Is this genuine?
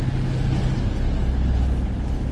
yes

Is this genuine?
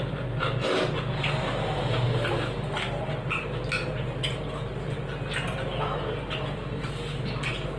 yes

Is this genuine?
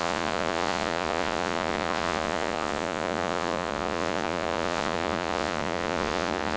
no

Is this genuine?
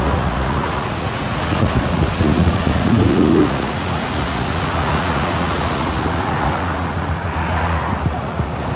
no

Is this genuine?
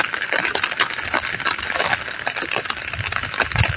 yes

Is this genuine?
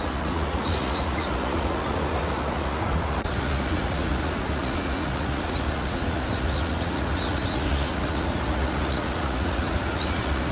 no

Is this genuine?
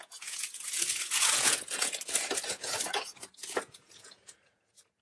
no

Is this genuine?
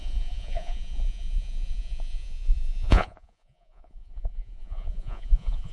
no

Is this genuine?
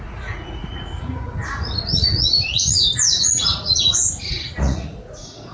no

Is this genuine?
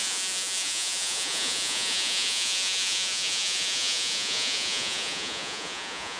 no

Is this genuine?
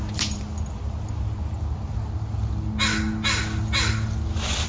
yes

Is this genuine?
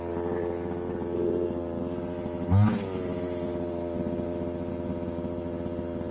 yes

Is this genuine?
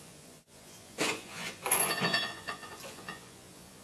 no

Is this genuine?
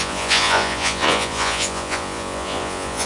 no